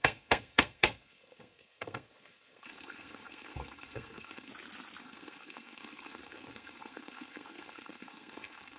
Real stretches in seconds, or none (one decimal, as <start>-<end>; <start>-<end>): 4.5-5.0